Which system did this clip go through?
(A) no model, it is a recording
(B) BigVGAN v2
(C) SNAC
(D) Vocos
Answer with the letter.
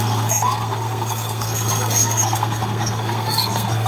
C